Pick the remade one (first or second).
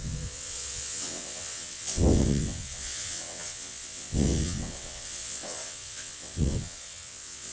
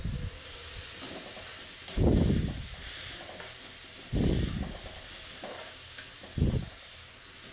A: first